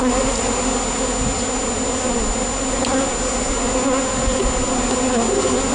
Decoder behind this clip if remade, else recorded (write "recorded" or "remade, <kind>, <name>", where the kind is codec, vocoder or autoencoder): recorded